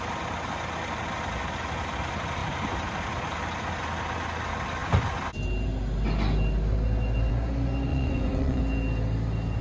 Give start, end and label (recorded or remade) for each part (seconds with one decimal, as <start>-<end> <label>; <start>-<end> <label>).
0.0-7.9 recorded; 7.9-8.6 remade; 8.6-9.6 recorded